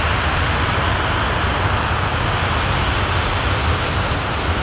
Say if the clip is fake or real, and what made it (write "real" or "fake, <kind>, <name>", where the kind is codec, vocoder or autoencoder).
real